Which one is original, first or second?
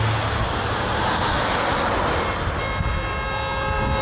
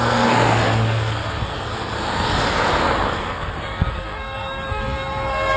first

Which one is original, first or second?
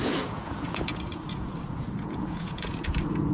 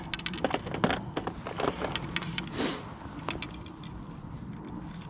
second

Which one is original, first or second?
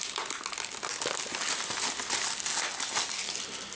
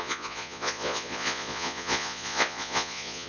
first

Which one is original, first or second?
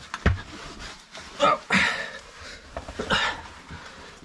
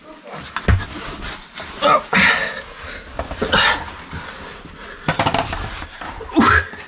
second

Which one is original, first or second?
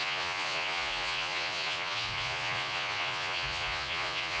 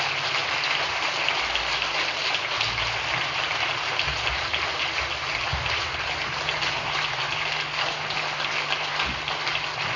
second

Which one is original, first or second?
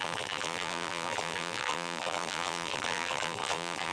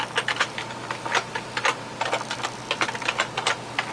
second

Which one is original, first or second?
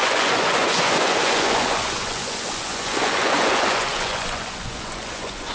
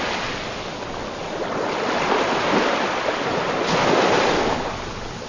second